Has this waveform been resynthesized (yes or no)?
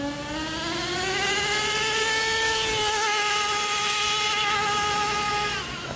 no